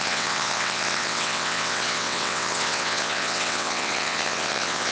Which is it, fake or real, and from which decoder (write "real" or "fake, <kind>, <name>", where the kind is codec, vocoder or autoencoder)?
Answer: fake, vocoder, WaveNeXt